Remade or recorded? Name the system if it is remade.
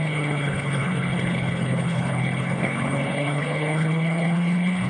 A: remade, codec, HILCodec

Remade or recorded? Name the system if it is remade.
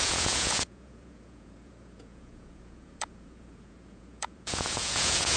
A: remade, vocoder, Vocos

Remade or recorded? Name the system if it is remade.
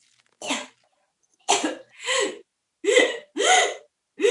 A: recorded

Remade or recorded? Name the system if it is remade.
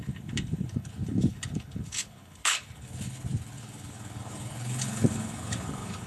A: remade, codec, HILCodec